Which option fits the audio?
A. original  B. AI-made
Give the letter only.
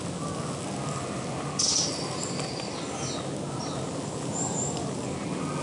A